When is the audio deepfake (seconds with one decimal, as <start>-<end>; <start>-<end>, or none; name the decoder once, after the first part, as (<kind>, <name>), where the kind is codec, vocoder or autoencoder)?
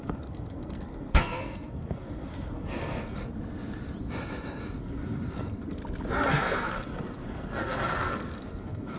0.0-3.2 (codec, SNAC); 4.8-5.8; 6.3-9.0